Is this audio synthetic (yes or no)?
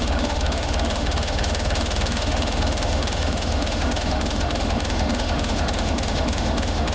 yes